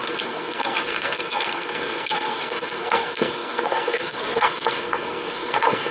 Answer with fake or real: fake